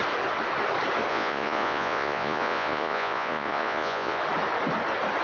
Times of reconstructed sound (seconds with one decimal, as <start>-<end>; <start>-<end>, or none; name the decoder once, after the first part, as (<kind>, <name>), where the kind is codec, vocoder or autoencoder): 1.1-4.2 (vocoder, Vocos)